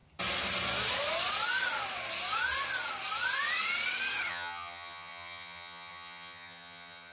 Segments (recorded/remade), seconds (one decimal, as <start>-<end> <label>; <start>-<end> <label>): 0.0-4.3 recorded; 4.3-7.1 remade